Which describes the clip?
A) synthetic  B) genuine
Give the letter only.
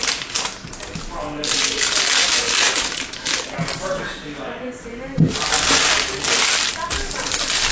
B